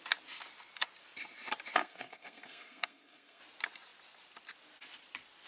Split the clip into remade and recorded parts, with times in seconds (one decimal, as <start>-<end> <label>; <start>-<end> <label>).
0.0-1.8 recorded; 1.8-3.4 remade; 3.4-5.5 recorded